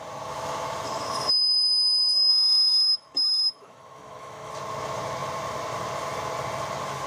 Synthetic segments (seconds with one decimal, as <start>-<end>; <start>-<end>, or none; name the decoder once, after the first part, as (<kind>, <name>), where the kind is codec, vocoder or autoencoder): 2.3-4.5 (autoencoder, DAC-VAE)